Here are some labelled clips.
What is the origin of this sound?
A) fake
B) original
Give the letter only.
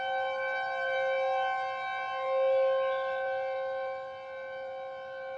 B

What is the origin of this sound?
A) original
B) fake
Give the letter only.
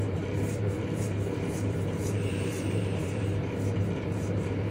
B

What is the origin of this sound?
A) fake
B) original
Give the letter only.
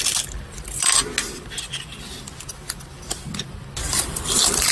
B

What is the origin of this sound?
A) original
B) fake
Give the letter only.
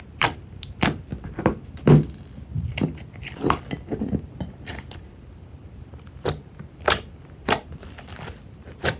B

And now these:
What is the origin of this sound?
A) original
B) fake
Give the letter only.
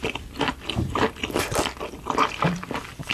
B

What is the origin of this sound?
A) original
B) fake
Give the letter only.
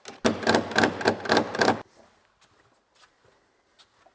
A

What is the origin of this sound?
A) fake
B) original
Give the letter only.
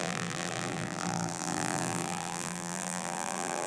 A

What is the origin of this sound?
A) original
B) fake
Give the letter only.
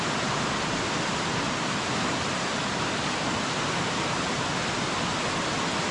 B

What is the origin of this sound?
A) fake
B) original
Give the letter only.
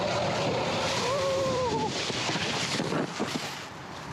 A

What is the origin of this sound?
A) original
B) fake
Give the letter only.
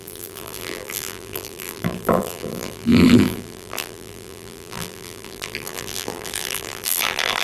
B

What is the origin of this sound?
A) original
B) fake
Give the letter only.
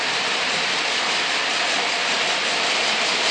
B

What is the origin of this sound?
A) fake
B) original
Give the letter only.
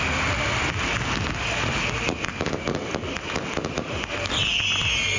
B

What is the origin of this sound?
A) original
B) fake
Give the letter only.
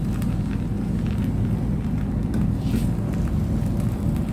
A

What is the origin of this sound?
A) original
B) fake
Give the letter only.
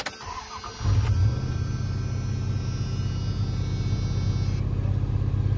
A